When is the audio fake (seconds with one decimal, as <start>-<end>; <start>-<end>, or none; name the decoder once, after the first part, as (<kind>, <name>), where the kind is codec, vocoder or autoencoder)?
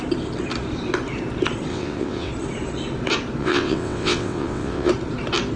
1.7-2.3 (vocoder, WaveNeXt); 3.4-4.9